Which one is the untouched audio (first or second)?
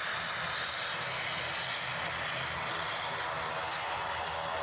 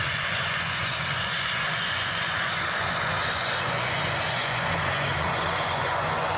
first